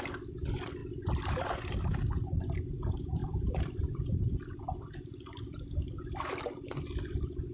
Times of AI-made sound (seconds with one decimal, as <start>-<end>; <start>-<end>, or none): 3.2-6.2